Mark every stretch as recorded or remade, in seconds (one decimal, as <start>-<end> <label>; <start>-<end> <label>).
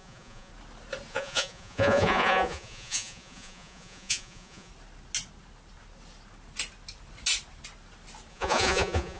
0.0-0.5 remade; 0.5-1.1 recorded; 1.1-4.7 remade; 4.7-8.3 recorded; 8.3-9.2 remade